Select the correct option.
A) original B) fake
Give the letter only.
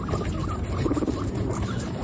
B